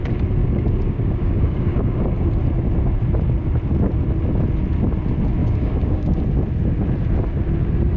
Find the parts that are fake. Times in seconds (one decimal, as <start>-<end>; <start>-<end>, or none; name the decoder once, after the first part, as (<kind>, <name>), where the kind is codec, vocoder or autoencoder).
0.4-2.0 (codec, DAC); 5.4-6.2